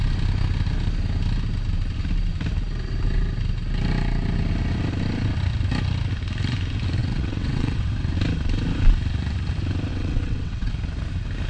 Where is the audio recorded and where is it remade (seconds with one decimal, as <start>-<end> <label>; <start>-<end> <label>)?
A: 0.0-7.0 recorded; 7.0-7.8 remade; 7.8-9.9 recorded; 9.9-10.7 remade; 10.7-11.5 recorded